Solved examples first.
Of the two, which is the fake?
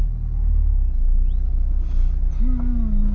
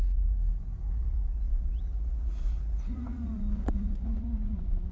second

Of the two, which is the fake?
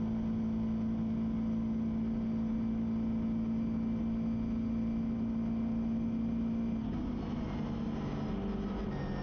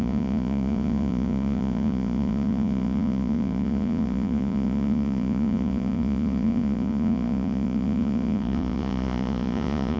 second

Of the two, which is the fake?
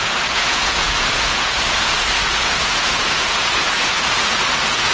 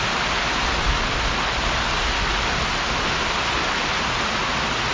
first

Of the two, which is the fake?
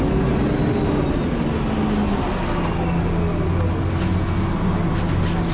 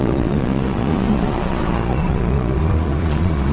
second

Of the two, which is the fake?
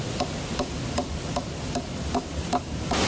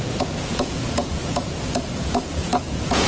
second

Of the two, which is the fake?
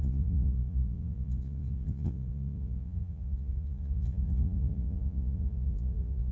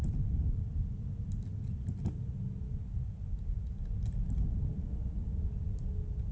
first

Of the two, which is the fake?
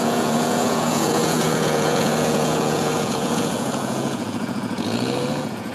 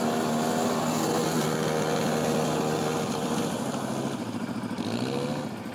first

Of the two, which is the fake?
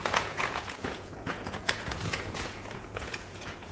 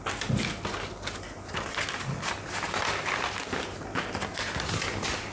first